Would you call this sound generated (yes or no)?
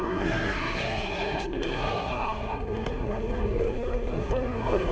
yes